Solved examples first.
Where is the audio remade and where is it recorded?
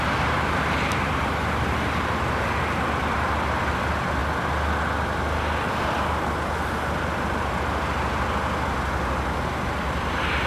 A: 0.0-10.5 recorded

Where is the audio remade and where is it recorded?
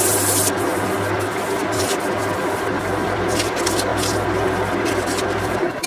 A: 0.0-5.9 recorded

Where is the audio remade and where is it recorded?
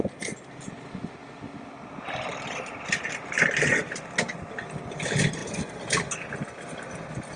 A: 0.0-7.4 recorded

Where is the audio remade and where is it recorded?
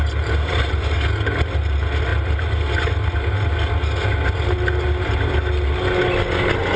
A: 0.0-6.8 recorded